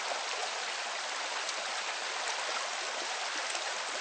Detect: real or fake real